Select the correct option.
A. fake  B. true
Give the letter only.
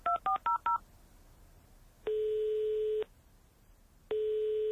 B